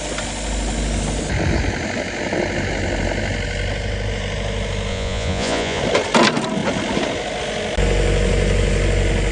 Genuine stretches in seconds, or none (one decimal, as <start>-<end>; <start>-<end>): 0.0-4.9; 5.8-9.3